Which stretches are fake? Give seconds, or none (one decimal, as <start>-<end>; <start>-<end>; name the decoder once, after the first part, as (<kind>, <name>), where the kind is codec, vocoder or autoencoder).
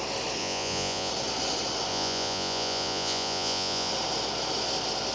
0.4-1.1 (vocoder, Vocos); 1.9-3.9